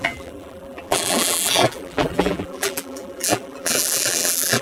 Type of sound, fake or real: fake